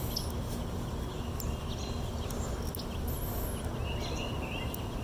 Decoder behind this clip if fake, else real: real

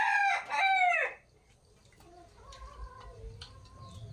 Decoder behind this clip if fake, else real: real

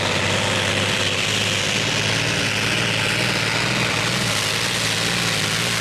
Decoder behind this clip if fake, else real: real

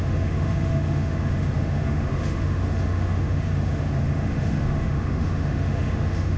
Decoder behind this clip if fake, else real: fake, autoencoder, DAC-VAE